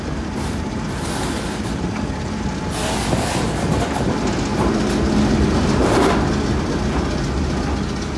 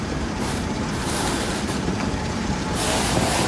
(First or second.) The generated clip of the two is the second